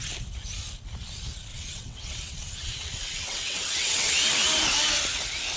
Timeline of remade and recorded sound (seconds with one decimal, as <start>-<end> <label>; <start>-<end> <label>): 0.0-1.5 recorded; 1.5-4.1 remade; 4.1-5.6 recorded